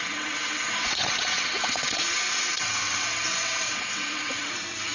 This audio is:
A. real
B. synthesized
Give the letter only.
B